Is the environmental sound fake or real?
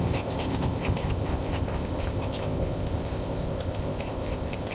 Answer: fake